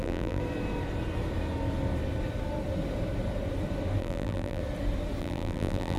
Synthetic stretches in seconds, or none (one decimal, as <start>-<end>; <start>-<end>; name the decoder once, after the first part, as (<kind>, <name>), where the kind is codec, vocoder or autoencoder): 0.0-0.4 (vocoder, BigVGAN v2); 4.0-4.6; 5.2-6.0

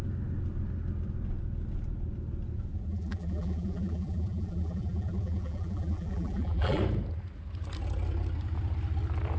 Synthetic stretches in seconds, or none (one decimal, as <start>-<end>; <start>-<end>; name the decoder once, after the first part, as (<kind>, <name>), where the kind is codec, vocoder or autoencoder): 2.9-6.8 (vocoder, BigVGAN v2)

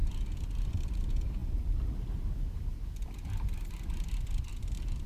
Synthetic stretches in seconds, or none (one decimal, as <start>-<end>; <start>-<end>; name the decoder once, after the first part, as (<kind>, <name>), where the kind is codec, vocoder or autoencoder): none

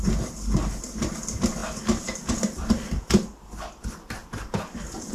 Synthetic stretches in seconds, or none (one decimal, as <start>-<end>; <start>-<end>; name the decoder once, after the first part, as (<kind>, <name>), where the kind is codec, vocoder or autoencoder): 4.2-5.1 (vocoder, BigVGAN v2)

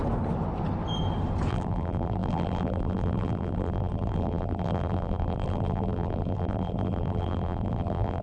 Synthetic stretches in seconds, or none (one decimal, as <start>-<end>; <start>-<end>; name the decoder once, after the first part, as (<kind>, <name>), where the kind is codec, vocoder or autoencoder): 1.5-8.2 (vocoder, BigVGAN v2)